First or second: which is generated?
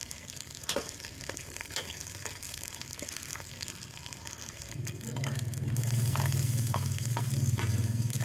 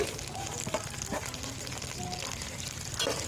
first